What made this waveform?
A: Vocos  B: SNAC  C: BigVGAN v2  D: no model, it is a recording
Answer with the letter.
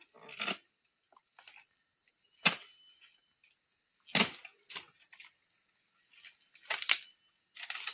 D